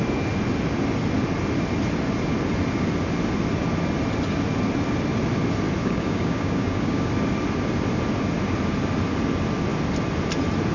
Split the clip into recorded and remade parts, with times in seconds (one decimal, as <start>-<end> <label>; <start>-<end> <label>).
0.0-5.8 recorded; 5.8-7.1 remade; 7.1-10.7 recorded

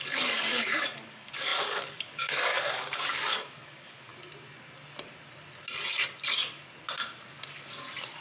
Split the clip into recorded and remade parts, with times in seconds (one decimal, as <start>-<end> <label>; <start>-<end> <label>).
0.0-4.1 remade; 4.1-8.2 recorded

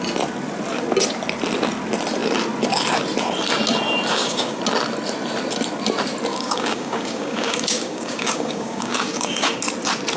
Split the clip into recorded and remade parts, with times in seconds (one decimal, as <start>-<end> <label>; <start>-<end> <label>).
0.0-4.1 recorded; 4.1-4.6 remade; 4.6-6.3 recorded; 6.3-9.6 remade; 9.6-10.2 recorded